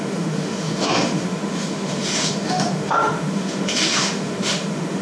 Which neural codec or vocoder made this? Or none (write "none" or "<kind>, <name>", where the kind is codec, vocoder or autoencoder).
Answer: autoencoder, DAC-VAE